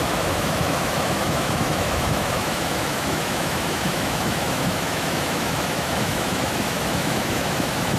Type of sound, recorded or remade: remade